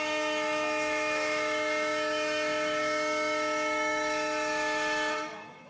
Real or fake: fake